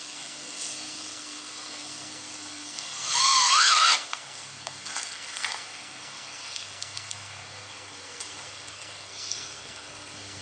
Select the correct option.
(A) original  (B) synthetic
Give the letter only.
B